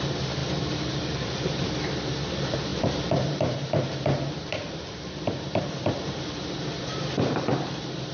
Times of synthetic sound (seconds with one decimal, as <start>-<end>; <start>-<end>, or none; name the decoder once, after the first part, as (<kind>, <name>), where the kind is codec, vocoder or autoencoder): 0.0-8.1 (vocoder, BigVGAN v2)